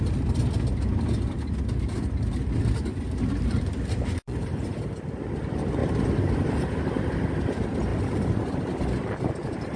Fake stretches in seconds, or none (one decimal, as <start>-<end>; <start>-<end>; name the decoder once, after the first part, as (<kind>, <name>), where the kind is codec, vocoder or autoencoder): 2.9-4.7 (vocoder, BigVGAN v2); 5.8-7.0